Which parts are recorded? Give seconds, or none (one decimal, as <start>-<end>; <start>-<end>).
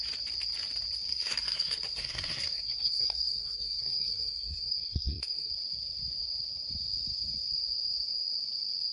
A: 0.0-1.1; 5.5-8.9